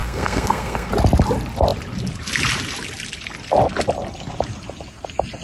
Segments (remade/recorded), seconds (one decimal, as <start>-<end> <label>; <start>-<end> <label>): 0.0-0.9 remade; 0.9-5.4 recorded